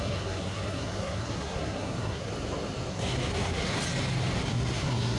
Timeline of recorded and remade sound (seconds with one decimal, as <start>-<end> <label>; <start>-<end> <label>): 0.0-2.3 remade; 2.3-2.9 recorded; 2.9-3.8 remade; 3.8-4.4 recorded; 4.4-5.2 remade